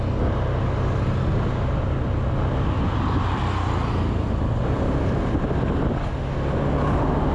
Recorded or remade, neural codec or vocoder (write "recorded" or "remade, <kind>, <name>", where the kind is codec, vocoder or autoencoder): recorded